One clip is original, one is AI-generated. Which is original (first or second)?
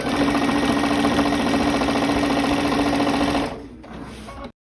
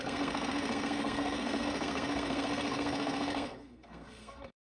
first